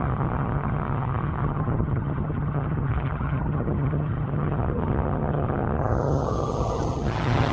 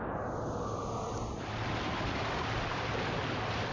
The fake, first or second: first